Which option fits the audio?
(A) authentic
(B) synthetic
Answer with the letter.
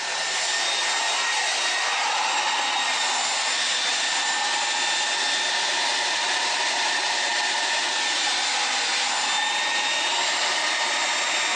A